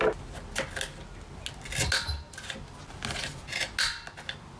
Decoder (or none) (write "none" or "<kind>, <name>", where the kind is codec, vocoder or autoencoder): none